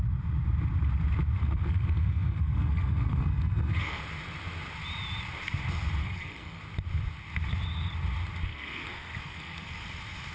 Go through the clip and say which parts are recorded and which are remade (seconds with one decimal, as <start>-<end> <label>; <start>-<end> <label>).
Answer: 0.0-1.4 recorded; 1.4-4.0 remade; 4.0-6.0 recorded; 6.0-6.6 remade; 6.6-8.5 recorded; 8.5-9.8 remade; 9.8-10.3 recorded